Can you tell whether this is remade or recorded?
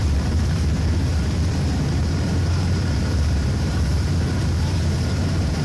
remade